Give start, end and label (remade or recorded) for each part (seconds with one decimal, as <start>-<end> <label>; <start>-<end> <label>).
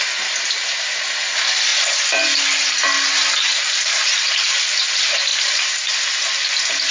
0.0-3.5 recorded; 3.5-4.8 remade; 4.8-5.3 recorded; 5.3-5.9 remade; 5.9-6.9 recorded